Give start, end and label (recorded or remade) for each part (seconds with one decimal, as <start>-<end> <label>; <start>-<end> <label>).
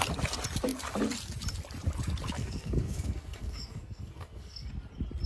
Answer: 0.0-2.4 recorded; 2.4-4.7 remade; 4.7-5.3 recorded